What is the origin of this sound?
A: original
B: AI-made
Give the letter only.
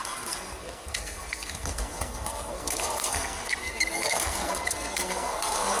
B